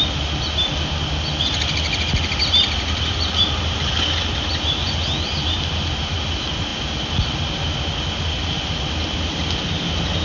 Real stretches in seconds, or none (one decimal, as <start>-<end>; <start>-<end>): 0.0-10.2

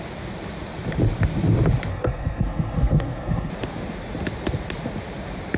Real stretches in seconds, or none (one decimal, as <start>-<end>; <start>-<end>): 0.0-1.9; 3.5-5.6

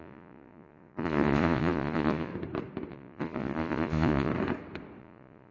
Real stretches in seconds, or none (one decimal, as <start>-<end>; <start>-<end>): 2.3-2.9; 4.3-5.0